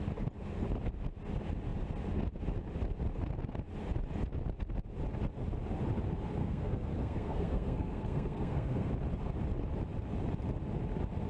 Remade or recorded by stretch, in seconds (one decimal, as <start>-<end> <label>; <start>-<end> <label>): 0.0-6.4 recorded; 6.4-8.9 remade; 8.9-11.3 recorded